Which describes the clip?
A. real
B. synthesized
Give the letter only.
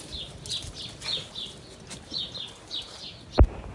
A